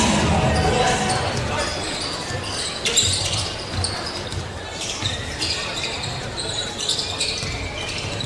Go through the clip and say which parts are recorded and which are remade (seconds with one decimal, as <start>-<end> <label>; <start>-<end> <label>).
0.0-1.6 recorded; 1.6-3.5 remade; 3.5-4.7 recorded; 4.7-6.7 remade; 6.7-8.3 recorded